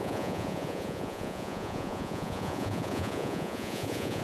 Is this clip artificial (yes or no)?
yes